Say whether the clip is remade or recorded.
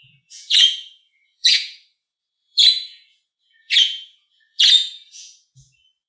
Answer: remade